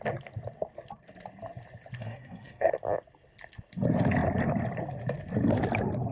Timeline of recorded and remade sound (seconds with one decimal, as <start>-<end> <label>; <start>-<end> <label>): 0.0-2.0 recorded; 2.0-2.7 remade; 2.7-6.1 recorded